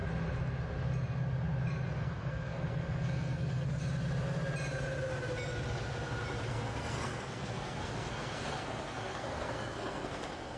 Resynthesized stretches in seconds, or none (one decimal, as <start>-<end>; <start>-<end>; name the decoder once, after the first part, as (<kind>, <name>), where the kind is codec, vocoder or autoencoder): 2.0-3.8 (codec, SNAC); 6.5-10.6